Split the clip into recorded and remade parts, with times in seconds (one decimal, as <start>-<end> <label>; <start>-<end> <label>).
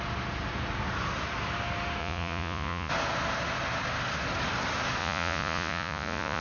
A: 0.0-2.0 recorded; 2.0-2.9 remade; 2.9-5.0 recorded; 5.0-6.4 remade